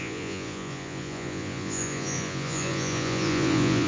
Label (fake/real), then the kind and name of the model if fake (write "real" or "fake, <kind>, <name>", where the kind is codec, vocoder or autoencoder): fake, vocoder, Vocos